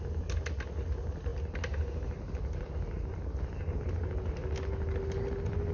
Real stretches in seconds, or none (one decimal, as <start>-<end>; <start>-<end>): 0.0-5.7